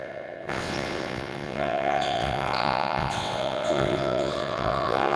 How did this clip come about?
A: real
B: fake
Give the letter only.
B